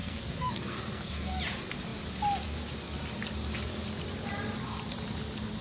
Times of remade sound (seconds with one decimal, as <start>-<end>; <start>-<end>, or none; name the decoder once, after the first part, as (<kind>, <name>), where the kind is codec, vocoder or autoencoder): 0.0-1.4 (codec, SNAC)